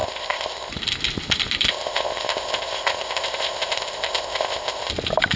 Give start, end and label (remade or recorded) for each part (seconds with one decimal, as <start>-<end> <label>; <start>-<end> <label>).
0.0-0.7 remade; 0.7-1.7 recorded; 1.7-4.9 remade; 4.9-5.4 recorded